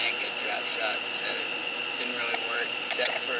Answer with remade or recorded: recorded